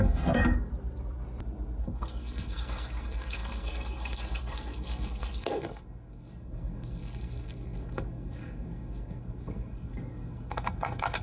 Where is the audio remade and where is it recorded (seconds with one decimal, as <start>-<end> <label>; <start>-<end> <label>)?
0.0-0.7 remade; 0.7-1.8 recorded; 1.8-11.2 remade